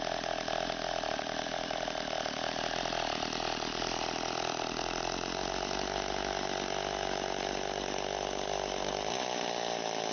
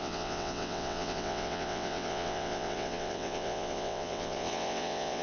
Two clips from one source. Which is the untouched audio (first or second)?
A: first